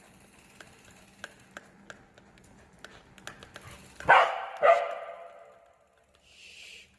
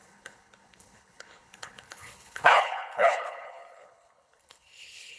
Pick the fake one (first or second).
second